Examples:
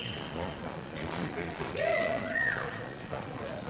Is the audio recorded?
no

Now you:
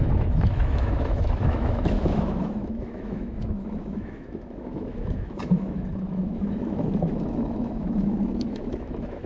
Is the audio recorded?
no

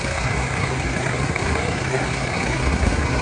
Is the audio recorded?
no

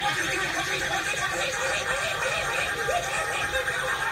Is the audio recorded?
no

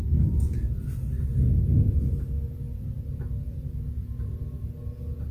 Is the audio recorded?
no